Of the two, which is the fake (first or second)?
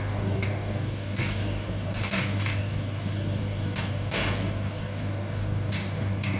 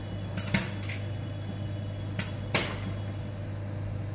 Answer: first